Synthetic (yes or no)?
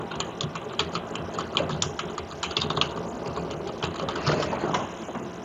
no